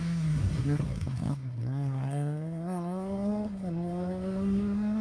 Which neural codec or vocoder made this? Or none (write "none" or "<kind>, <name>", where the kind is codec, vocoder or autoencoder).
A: codec, SNAC